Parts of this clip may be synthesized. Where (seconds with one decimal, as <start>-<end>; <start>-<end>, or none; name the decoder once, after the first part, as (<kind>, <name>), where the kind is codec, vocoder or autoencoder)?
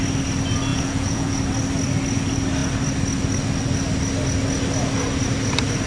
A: 0.7-1.4 (vocoder, Vocos)